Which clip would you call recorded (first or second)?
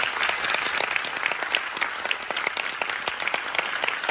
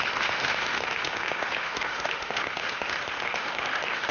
first